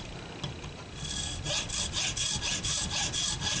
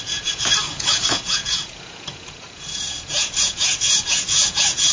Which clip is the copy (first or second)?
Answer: second